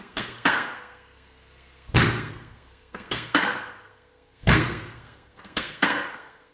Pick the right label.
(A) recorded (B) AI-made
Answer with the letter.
B